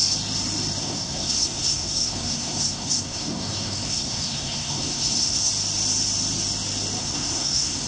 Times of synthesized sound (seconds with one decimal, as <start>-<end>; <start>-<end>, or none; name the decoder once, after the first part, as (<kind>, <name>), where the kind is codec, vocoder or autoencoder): 0.8-5.5 (codec, SNAC); 7.0-7.9